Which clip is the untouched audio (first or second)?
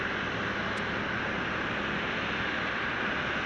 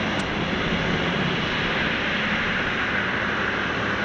first